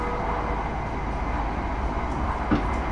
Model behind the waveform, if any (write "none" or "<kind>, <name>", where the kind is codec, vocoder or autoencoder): none